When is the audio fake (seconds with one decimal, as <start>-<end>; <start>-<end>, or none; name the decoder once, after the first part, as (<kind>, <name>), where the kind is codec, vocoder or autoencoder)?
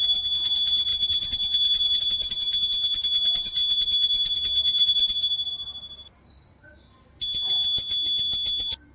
none